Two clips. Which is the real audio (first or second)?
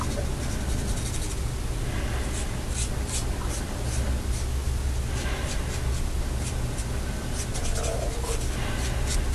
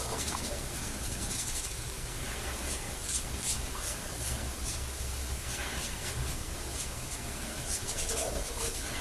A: first